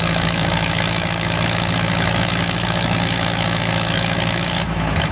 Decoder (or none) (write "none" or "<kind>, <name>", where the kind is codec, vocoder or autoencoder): autoencoder, DAC-VAE